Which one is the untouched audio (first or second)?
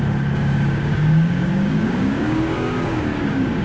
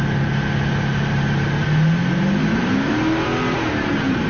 second